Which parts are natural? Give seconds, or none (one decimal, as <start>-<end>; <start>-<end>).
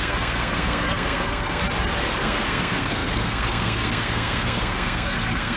1.6-2.2